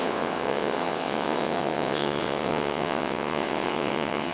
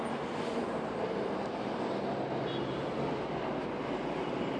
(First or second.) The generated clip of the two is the first